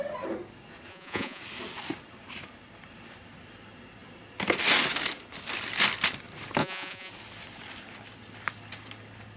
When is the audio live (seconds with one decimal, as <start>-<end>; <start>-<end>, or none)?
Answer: 0.0-0.9; 1.4-6.6; 7.1-9.4

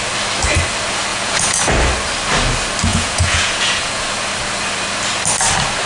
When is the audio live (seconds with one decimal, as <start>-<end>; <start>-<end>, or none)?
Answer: 0.0-1.1; 1.6-2.9; 4.0-5.9